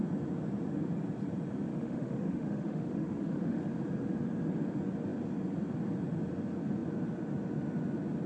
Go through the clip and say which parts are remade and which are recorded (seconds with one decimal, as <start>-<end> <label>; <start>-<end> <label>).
0.0-1.7 recorded; 1.7-3.6 remade; 3.6-8.3 recorded